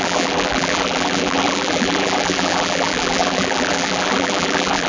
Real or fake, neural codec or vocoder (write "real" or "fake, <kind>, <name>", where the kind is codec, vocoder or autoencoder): fake, vocoder, BigVGAN v2